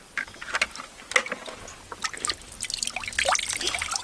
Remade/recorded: recorded